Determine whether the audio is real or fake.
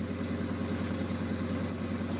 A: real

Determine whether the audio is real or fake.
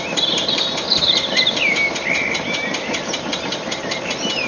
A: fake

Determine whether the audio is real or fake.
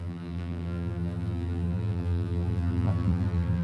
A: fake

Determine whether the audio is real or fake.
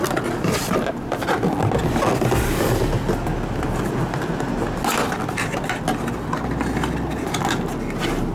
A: real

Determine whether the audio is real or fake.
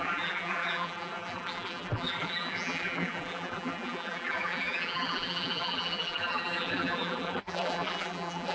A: fake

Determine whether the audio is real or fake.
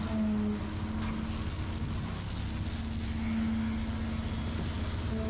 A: real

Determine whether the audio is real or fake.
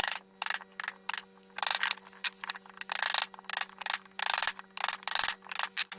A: real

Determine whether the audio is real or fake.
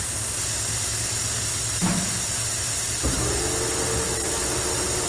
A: real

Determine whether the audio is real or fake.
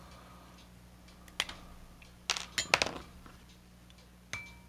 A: real